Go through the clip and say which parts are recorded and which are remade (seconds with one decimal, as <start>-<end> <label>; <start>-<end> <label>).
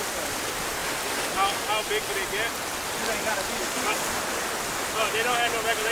0.0-5.9 recorded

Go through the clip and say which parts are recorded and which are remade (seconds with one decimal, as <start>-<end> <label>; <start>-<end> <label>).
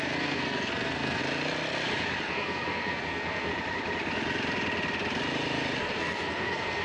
0.0-1.2 remade; 1.2-2.3 recorded; 2.3-3.5 remade; 3.5-5.8 recorded; 5.8-6.8 remade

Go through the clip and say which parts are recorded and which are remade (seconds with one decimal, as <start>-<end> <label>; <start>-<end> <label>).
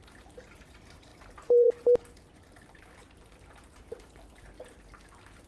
0.0-5.5 remade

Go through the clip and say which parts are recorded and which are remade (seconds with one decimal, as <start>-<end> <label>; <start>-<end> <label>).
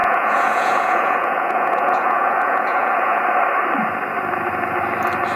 0.0-3.2 remade; 3.2-5.4 recorded